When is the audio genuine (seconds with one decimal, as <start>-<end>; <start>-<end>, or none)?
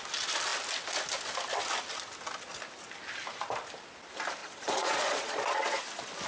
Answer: 0.0-4.4; 5.8-6.3